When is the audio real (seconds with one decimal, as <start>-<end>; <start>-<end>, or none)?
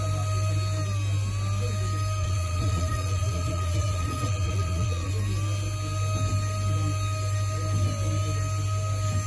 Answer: 0.0-2.2; 5.1-9.3